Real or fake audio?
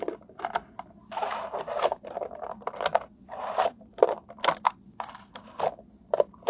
real